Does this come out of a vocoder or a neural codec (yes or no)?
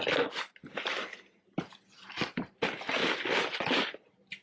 no